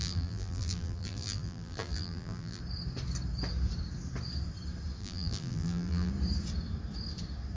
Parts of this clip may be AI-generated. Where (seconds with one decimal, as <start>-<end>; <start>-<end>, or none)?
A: 0.0-2.6; 5.0-6.1